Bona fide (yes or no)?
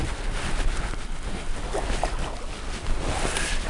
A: yes